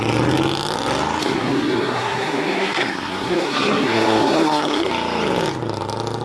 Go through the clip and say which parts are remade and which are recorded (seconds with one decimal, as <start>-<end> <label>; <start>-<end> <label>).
0.0-1.2 recorded; 1.2-4.9 remade; 4.9-6.2 recorded